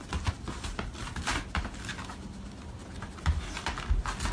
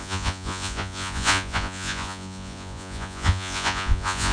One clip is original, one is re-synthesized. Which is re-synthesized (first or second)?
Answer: second